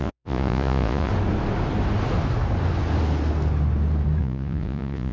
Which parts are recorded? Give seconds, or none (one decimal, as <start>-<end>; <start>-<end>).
1.1-4.2